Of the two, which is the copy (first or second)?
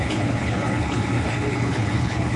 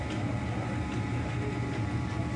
first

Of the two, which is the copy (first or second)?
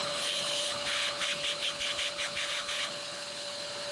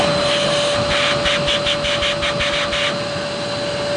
first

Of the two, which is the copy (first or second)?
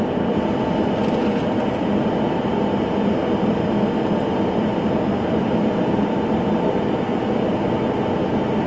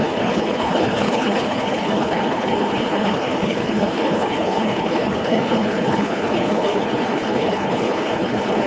second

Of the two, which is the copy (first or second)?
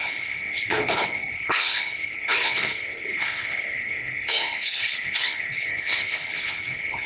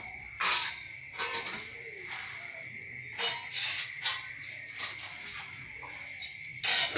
first